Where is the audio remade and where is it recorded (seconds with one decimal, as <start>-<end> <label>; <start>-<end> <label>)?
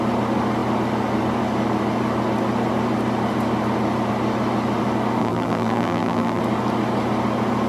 0.0-5.2 recorded; 5.2-6.4 remade; 6.4-7.7 recorded